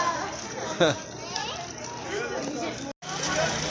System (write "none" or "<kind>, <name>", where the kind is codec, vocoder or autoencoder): none